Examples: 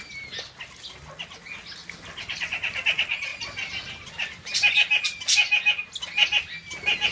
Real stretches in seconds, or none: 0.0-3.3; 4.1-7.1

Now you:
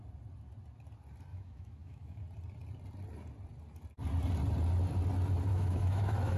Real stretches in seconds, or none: 0.0-1.3; 2.2-5.5

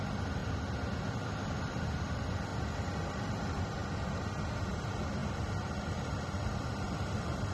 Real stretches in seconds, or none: 0.4-1.6; 2.5-3.1; 3.8-4.7; 5.2-5.7

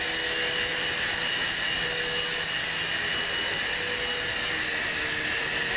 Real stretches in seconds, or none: 0.0-0.7; 1.5-5.8

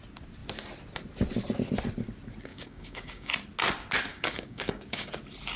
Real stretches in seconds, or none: 0.0-2.5; 3.3-4.1; 5.1-5.6

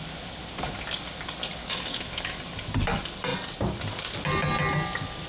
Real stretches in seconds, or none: 0.0-1.6; 2.4-5.3

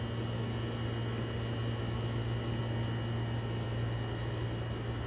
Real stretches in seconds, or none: 0.0-5.1

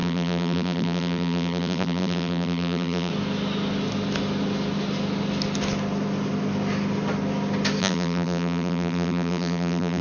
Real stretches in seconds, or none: 3.1-7.8